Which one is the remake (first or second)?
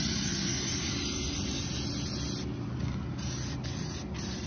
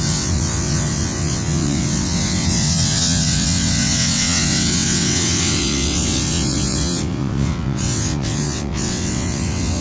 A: second